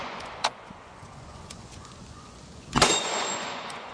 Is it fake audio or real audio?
fake